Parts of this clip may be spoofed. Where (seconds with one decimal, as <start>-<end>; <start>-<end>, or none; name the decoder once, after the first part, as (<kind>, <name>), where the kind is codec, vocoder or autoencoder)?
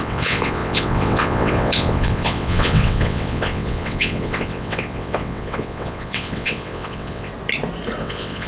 0.0-7.3 (vocoder, WaveNeXt); 8.0-8.5